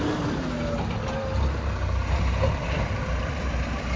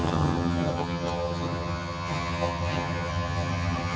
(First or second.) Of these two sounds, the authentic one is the first